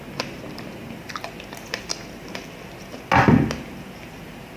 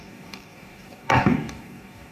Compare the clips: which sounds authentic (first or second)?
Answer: first